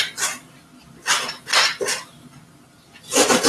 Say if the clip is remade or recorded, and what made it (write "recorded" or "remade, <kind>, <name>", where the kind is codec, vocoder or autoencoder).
recorded